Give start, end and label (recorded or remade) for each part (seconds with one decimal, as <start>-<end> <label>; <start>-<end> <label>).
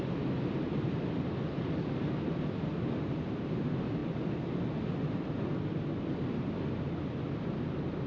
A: 0.0-8.1 recorded